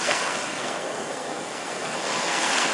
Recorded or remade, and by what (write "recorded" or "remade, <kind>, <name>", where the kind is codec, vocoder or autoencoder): remade, codec, SNAC